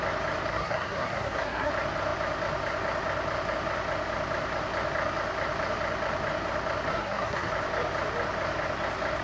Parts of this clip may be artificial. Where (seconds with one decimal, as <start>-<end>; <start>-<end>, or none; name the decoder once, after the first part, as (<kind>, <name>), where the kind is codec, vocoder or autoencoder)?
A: 0.5-1.7 (codec, SNAC); 6.9-7.5